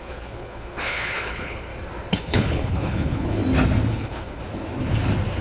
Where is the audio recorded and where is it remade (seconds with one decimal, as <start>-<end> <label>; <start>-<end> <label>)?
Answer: 0.0-1.7 remade; 1.7-2.2 recorded; 2.2-3.4 remade; 3.4-3.9 recorded; 3.9-4.4 remade; 4.4-5.4 recorded